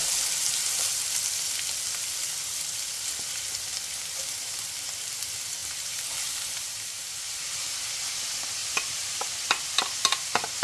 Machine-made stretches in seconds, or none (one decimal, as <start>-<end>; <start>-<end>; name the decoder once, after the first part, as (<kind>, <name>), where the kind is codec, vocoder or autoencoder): 5.6-7.8 (vocoder, BigVGAN v2); 8.6-9.2